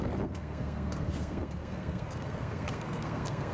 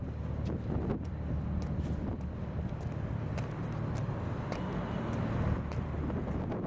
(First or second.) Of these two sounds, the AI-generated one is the first